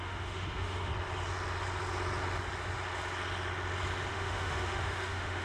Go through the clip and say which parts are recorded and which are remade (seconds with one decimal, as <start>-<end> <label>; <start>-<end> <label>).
0.0-0.9 remade; 0.9-4.1 recorded; 4.1-5.4 remade